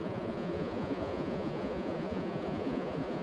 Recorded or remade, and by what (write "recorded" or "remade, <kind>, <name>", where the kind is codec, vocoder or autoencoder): remade, vocoder, Vocos